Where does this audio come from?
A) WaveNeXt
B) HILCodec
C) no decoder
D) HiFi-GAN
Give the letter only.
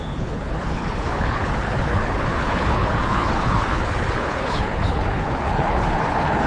B